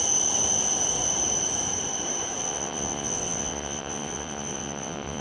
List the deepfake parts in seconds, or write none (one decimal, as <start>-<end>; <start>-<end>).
2.4-5.2